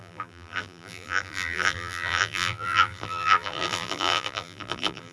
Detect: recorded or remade remade